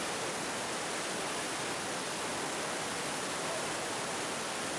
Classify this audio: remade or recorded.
recorded